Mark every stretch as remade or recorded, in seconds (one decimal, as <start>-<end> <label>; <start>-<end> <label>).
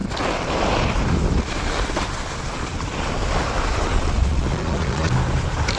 0.0-3.9 recorded; 3.9-5.1 remade; 5.1-5.8 recorded